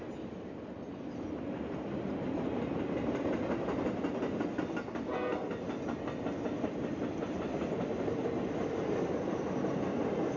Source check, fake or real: real